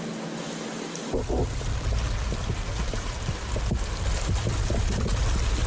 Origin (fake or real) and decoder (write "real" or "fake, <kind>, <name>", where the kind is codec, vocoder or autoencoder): real